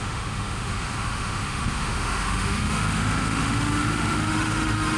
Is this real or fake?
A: fake